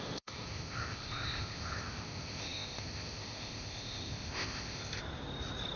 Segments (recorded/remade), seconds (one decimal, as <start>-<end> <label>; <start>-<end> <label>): 0.0-5.0 remade; 5.0-5.8 recorded